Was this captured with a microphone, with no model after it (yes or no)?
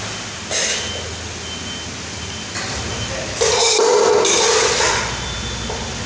yes